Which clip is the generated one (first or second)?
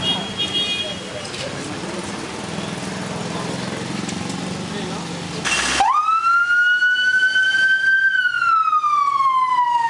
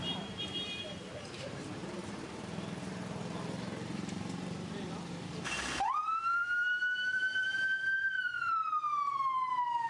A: second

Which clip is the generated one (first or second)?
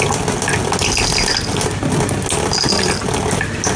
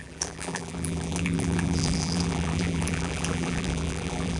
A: second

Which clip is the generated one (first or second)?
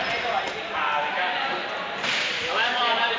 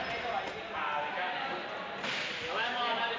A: first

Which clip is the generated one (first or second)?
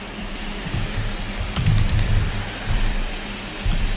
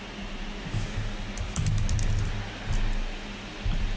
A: first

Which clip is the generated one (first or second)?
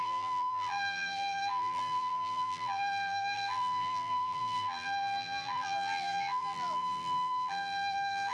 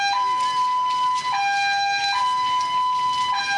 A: first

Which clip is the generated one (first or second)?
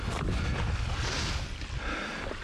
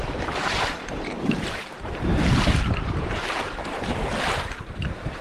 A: second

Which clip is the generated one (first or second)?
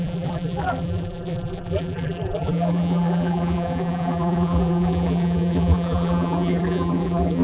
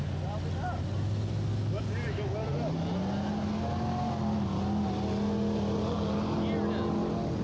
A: first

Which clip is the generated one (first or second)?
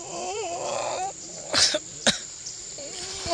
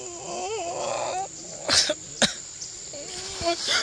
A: first